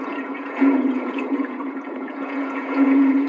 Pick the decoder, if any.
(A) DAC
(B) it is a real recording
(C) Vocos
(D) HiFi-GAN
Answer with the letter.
C